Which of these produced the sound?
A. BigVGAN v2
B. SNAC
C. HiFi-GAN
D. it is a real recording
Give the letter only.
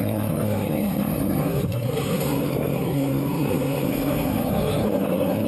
B